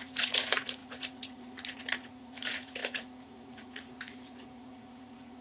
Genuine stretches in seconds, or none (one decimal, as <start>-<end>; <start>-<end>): none